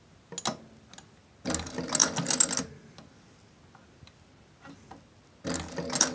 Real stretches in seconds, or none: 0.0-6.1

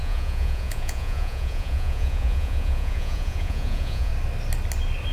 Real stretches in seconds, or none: 4.1-5.1

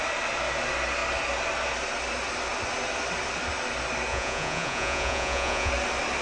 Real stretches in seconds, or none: 0.0-4.1; 5.7-6.2